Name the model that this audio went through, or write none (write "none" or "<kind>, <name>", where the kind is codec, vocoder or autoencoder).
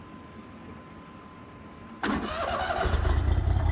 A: none